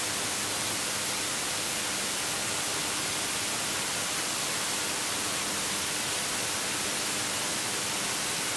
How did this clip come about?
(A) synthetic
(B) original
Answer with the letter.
B